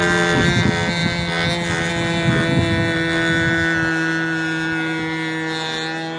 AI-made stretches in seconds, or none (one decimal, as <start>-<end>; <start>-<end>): none